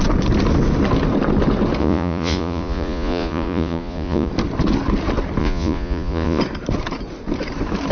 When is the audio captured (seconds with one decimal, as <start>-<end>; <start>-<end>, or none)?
0.0-1.8; 4.3-5.4; 6.4-7.9